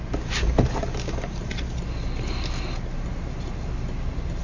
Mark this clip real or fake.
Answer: real